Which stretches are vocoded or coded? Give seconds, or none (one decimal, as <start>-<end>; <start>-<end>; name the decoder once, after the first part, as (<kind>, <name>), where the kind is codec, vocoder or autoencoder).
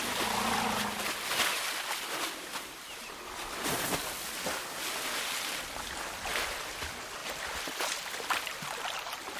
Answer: none